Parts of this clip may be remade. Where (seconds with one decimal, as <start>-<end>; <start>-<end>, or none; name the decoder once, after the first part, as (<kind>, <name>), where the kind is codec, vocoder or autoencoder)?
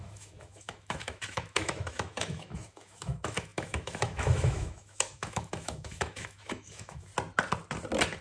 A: 0.0-7.1 (autoencoder, DAC-VAE)